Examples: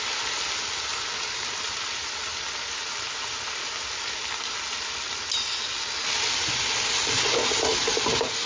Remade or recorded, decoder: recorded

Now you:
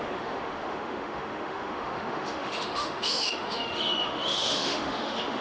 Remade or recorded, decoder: remade, autoencoder, DAC-VAE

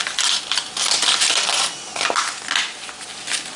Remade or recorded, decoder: recorded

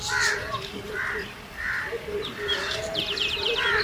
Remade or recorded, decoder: recorded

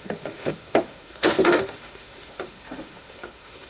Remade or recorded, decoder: remade, autoencoder, DAC-VAE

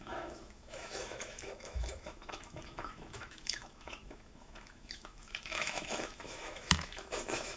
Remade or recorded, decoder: remade, autoencoder, DAC-VAE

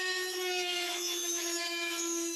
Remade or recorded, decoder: remade, autoencoder, DAC-VAE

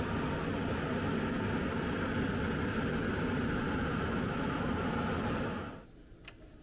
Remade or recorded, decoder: recorded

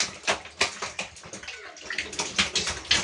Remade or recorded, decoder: recorded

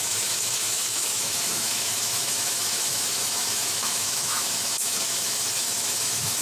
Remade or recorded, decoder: remade, autoencoder, DAC-VAE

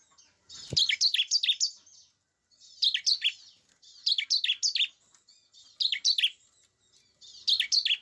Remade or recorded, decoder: recorded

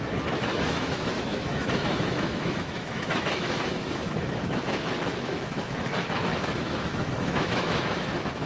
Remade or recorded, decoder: remade, autoencoder, DAC-VAE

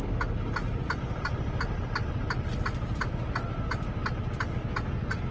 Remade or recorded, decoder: recorded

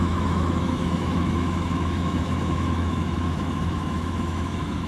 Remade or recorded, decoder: remade, autoencoder, DAC-VAE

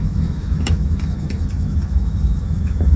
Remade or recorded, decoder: remade, autoencoder, DAC-VAE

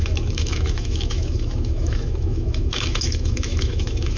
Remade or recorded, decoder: remade, autoencoder, DAC-VAE